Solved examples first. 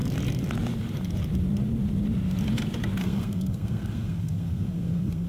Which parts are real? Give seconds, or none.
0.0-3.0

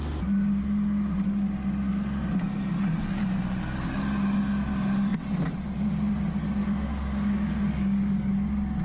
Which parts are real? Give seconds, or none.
0.0-6.6; 8.3-8.8

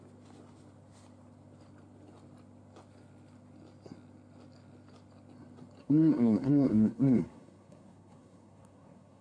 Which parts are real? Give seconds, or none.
0.0-5.8

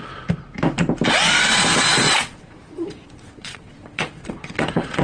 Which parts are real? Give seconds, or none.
0.0-1.9